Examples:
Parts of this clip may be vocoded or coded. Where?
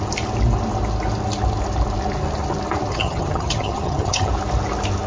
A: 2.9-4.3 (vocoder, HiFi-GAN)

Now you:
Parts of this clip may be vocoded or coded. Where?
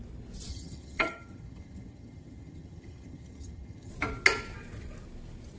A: 0.5-3.9 (vocoder, HiFi-GAN)